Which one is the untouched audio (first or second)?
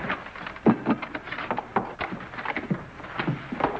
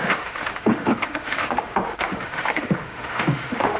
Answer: first